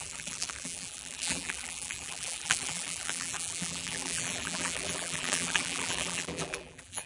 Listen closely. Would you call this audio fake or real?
fake